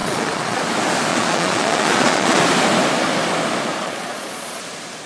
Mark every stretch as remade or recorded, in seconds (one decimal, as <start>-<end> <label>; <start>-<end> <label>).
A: 0.0-0.6 remade; 0.6-1.1 recorded; 1.1-2.4 remade; 2.4-3.8 recorded; 3.8-4.6 remade; 4.6-5.1 recorded